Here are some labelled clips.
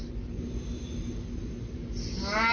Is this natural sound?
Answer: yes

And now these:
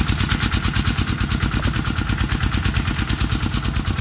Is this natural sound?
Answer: yes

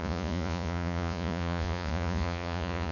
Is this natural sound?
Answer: no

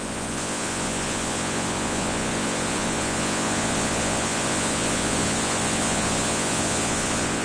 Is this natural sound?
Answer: no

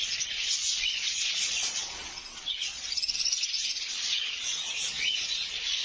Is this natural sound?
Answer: no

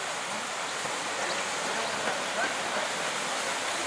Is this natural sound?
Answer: yes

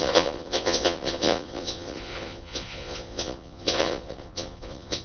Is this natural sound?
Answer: no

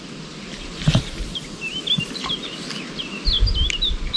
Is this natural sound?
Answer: yes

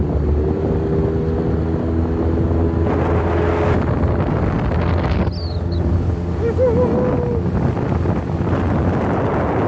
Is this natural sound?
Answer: yes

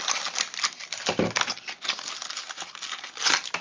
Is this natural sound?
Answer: yes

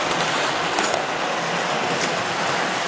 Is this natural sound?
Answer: yes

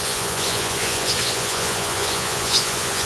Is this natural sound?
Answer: no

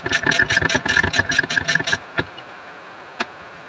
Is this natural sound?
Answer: yes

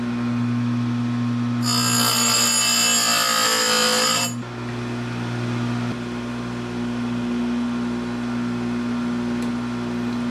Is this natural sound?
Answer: yes